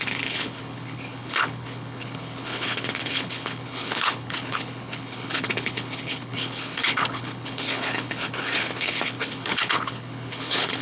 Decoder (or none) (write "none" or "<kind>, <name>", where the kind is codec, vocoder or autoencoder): codec, HILCodec